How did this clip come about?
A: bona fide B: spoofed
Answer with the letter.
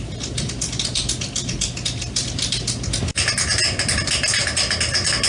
A